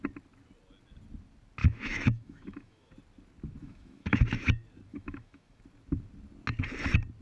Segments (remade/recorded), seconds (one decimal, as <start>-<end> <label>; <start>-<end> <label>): 0.0-1.6 recorded; 1.6-2.9 remade; 2.9-3.6 recorded; 3.6-4.2 remade; 4.2-4.9 recorded; 4.9-5.6 remade; 5.6-7.2 recorded